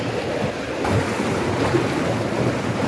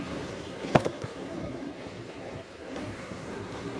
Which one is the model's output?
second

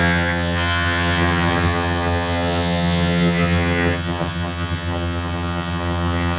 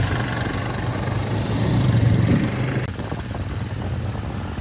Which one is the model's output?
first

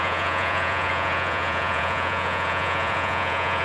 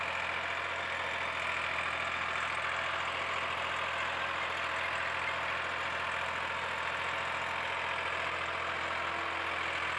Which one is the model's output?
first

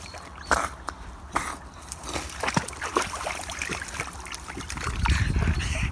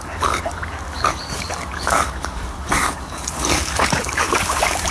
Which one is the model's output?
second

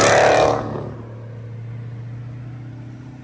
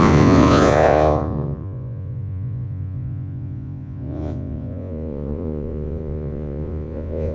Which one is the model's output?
second